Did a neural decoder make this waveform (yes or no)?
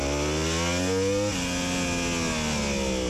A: no